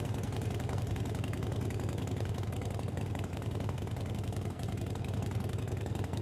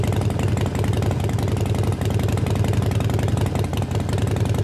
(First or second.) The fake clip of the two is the first